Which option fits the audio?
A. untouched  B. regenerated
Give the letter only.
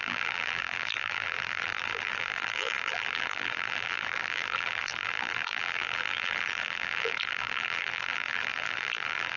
B